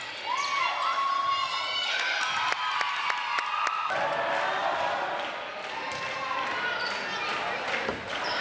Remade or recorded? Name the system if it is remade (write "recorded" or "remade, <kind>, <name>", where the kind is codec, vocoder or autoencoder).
recorded